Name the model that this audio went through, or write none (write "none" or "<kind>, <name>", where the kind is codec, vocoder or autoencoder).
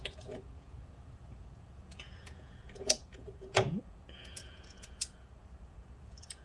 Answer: vocoder, Vocos